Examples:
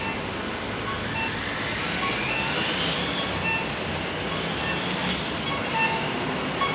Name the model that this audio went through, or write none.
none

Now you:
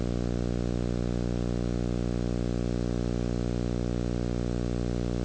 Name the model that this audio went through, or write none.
none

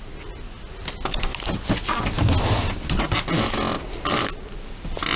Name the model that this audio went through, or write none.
none